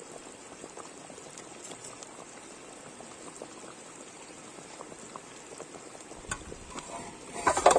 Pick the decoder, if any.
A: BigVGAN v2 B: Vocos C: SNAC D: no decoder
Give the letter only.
D